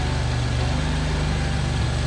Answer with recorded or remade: recorded